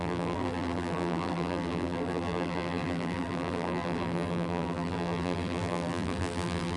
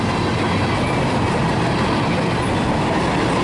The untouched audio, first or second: second